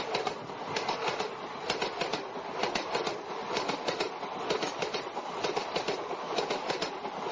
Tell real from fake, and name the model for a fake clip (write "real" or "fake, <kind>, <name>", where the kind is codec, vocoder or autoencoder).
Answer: real